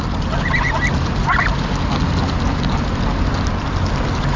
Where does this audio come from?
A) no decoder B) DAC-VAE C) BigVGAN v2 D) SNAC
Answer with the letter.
A